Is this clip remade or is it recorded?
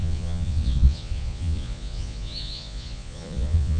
remade